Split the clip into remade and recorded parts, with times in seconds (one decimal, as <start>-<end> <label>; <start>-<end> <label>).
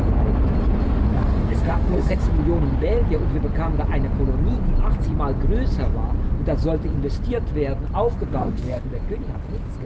0.0-1.1 recorded; 1.1-2.2 remade; 2.2-8.4 recorded; 8.4-8.9 remade; 8.9-9.9 recorded